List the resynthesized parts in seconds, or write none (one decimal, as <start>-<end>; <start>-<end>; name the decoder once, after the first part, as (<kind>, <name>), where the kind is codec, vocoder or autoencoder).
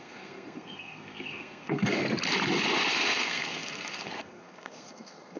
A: 0.0-2.0 (codec, SNAC); 2.9-5.4